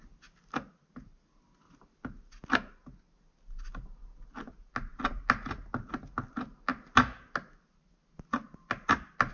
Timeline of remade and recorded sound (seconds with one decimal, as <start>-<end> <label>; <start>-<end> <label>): 0.0-9.3 recorded